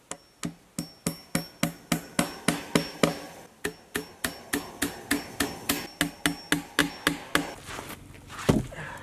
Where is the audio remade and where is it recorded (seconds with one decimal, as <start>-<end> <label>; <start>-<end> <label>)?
0.0-9.0 recorded

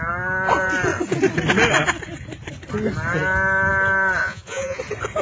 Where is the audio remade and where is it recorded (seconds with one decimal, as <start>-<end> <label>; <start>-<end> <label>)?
0.0-4.2 recorded; 4.2-4.8 remade; 4.8-5.2 recorded

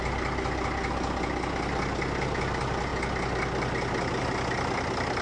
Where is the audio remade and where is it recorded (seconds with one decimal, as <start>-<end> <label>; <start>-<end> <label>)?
0.0-5.2 recorded

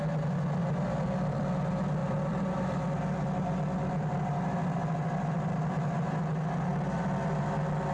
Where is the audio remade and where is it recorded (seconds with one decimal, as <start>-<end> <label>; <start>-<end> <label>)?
0.0-0.6 recorded; 0.6-1.5 remade; 1.5-2.0 recorded; 2.0-5.7 remade; 5.7-7.9 recorded

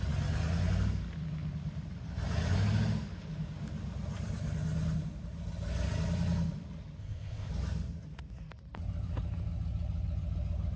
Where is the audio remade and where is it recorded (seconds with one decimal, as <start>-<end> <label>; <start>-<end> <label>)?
0.0-7.0 recorded; 7.0-7.5 remade; 7.5-10.8 recorded

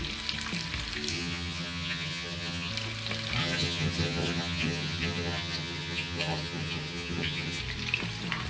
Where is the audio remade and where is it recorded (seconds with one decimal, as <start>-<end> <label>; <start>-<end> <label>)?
0.0-1.1 recorded; 1.1-2.7 remade; 2.7-3.4 recorded; 3.4-7.6 remade; 7.6-8.5 recorded